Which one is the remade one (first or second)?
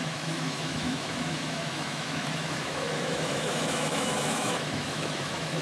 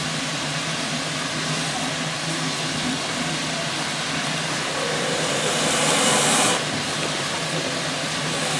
first